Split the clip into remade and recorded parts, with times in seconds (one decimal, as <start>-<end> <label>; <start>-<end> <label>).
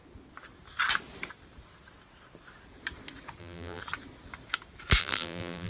0.0-3.4 recorded; 3.4-3.8 remade; 3.8-5.0 recorded; 5.0-5.7 remade